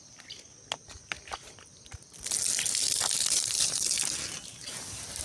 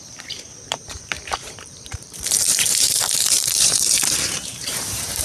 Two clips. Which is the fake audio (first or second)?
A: second